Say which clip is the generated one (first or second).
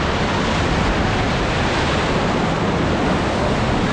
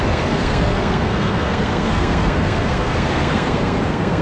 second